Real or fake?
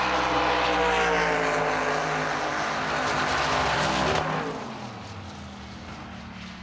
real